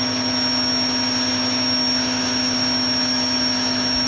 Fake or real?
fake